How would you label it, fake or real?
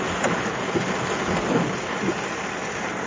real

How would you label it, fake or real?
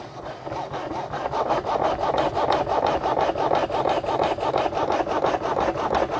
real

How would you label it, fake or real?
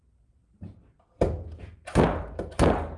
real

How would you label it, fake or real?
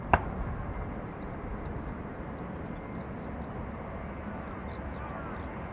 real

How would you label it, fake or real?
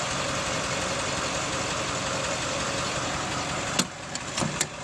real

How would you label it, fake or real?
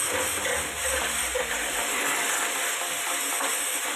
real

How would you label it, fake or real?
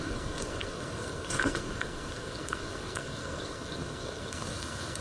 fake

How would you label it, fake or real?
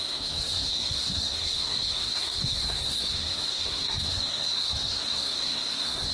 fake